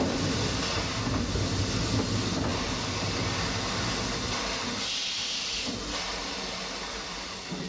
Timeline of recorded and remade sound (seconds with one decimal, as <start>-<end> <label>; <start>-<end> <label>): 0.0-7.7 recorded